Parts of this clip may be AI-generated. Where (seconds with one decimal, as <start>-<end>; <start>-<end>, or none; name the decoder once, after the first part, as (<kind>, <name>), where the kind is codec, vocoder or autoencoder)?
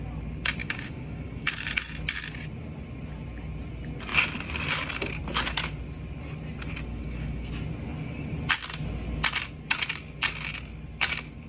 0.6-1.8 (codec, DAC); 6.9-7.5